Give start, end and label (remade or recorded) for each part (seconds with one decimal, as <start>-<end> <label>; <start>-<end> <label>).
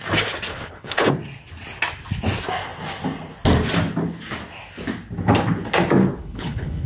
0.0-0.5 recorded; 0.5-1.1 remade; 1.1-6.2 recorded; 6.2-6.9 remade